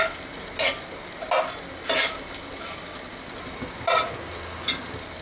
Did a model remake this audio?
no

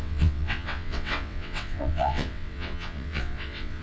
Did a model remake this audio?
yes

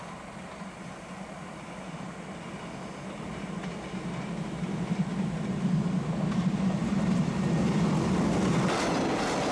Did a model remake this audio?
no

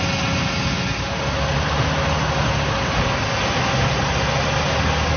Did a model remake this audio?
no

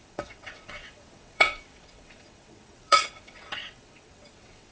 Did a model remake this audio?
yes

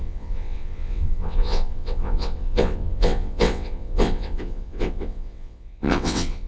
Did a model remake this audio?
yes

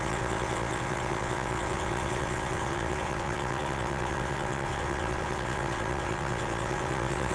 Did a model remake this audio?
yes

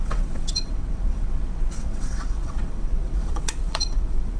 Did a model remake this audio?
yes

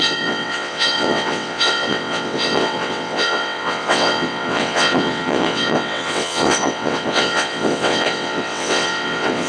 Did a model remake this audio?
yes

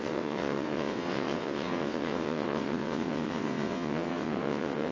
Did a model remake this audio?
yes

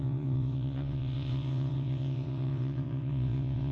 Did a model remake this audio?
yes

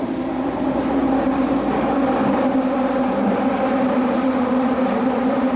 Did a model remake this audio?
no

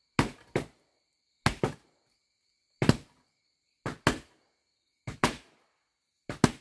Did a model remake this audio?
no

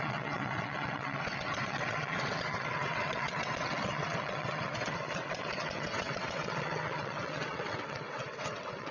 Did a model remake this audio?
yes